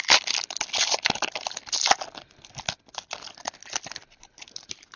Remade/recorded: recorded